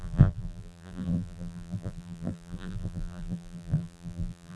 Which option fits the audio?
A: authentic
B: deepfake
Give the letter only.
B